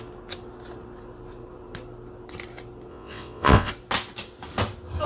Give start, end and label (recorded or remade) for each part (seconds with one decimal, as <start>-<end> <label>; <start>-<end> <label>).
0.0-2.9 recorded; 2.9-3.7 remade; 3.7-5.1 recorded